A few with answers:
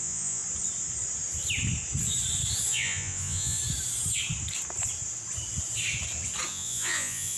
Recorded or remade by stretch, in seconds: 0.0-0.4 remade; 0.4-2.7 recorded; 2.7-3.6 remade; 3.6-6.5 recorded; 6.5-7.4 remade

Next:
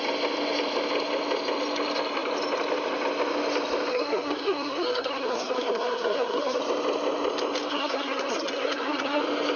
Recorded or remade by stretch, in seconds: 0.0-3.9 recorded; 3.9-6.6 remade; 6.6-7.7 recorded; 7.7-9.2 remade; 9.2-9.6 recorded